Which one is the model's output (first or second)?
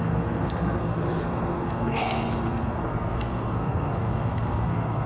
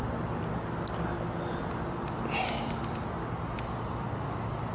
first